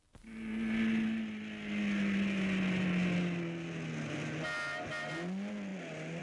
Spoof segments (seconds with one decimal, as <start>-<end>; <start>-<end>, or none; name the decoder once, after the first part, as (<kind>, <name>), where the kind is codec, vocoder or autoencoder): none